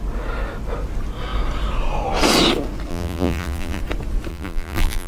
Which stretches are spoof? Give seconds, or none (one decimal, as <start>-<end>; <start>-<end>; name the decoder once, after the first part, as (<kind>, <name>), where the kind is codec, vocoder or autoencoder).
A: 2.9-3.8 (vocoder, BigVGAN v2); 4.3-5.1